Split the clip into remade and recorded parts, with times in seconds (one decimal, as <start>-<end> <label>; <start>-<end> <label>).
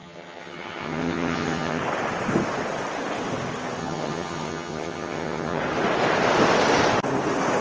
0.0-1.8 remade; 1.8-3.8 recorded; 3.8-5.6 remade; 5.6-7.6 recorded